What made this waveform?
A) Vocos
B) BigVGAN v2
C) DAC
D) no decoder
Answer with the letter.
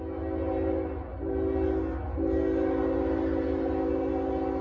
D